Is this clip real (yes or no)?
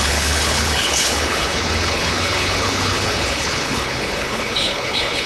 no